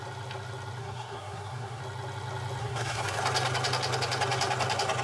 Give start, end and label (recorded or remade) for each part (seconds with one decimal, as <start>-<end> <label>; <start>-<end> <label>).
0.0-0.8 recorded; 0.8-1.8 remade; 1.8-2.6 recorded; 2.6-3.2 remade; 3.2-5.0 recorded